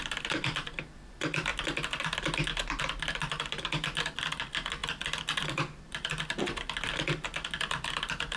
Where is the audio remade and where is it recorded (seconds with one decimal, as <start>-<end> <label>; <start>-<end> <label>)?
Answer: 0.0-1.5 remade; 1.5-3.1 recorded; 3.1-8.4 remade